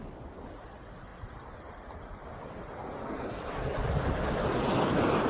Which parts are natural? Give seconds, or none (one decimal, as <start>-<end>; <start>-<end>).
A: 0.0-5.3